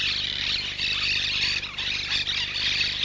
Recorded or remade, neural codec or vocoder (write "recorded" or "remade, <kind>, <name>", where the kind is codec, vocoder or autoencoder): recorded